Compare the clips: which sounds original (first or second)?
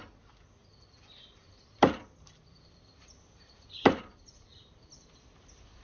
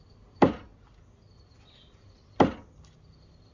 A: second